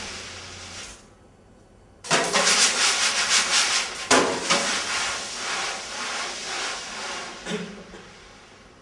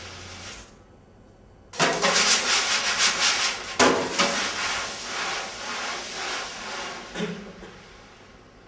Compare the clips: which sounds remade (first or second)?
first